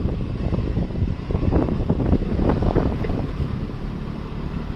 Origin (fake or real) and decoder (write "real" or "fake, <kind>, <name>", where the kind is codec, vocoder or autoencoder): fake, vocoder, BigVGAN v2